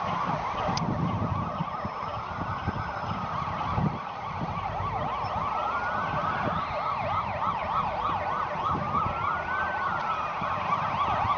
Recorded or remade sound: recorded